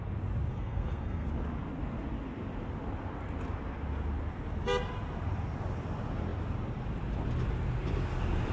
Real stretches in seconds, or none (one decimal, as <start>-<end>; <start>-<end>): 0.0-0.5; 1.3-8.5